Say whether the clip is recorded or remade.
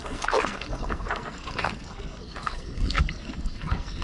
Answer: remade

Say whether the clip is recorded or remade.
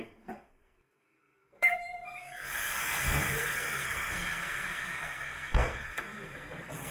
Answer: remade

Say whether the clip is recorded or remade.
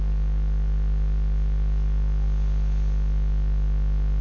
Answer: recorded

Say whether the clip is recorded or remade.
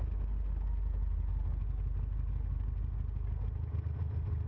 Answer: recorded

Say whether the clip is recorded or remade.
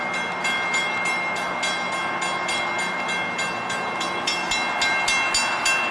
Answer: recorded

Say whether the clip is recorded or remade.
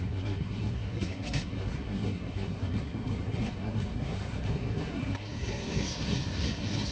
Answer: remade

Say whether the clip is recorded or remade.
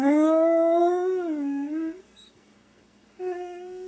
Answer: remade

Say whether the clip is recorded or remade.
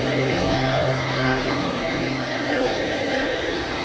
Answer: remade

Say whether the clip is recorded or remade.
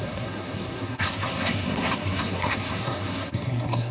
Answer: remade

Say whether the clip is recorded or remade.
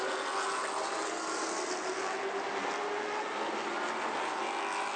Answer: recorded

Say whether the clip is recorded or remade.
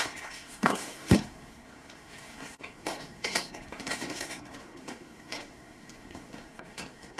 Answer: remade